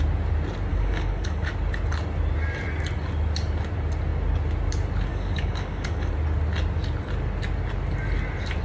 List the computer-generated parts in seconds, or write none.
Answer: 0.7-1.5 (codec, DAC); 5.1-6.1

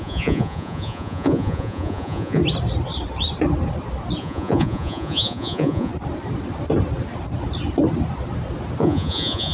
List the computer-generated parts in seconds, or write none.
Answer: 0.0-2.4 (vocoder, Vocos); 4.2-5.9; 8.8-9.5

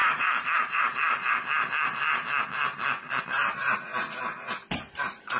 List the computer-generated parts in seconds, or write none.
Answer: 0.0-3.9 (vocoder, BigVGAN v2); 4.9-5.4